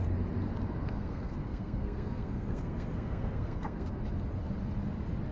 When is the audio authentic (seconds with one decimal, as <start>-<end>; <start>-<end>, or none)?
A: 0.0-0.8; 4.0-5.3

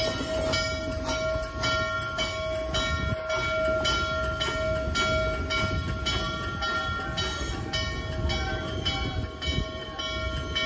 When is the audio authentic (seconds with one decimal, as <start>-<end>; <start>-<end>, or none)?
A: 0.0-10.7